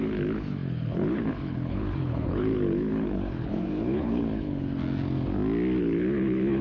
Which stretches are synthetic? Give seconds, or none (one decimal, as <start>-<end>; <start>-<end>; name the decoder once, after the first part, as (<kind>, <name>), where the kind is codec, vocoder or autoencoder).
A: 0.0-4.8 (codec, HILCodec); 5.8-6.6